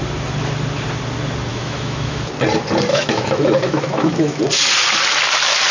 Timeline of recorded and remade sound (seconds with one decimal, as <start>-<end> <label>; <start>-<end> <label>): 0.0-1.5 recorded; 1.5-2.3 remade; 2.3-2.9 recorded; 2.9-4.4 remade; 4.4-5.7 recorded